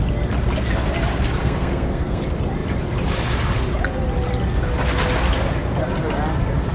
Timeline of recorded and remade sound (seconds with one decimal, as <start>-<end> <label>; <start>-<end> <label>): 0.0-1.4 recorded; 1.4-2.2 remade; 2.2-6.7 recorded

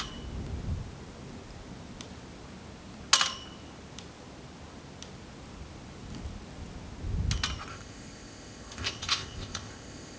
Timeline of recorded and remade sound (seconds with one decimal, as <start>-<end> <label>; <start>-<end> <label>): 0.0-7.7 recorded; 7.7-10.2 remade

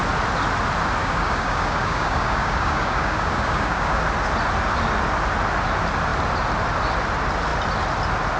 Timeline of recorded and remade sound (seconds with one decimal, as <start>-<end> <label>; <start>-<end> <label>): 0.0-1.0 recorded; 1.0-4.0 remade; 4.0-8.4 recorded

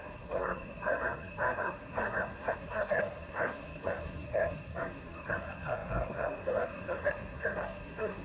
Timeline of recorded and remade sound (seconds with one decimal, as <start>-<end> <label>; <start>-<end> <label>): 0.0-8.2 remade